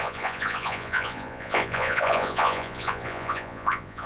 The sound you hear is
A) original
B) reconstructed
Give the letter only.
B